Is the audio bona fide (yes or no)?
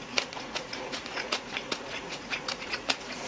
no